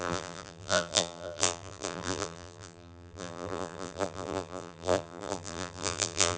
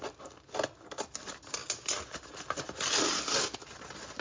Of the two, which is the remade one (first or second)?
first